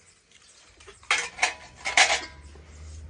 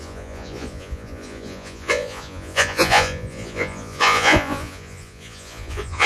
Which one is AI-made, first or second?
second